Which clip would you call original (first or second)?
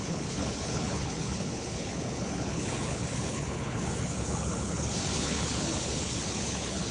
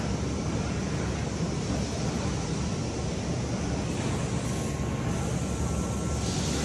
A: second